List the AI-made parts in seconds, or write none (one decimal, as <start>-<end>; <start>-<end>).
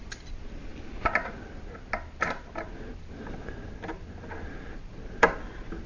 none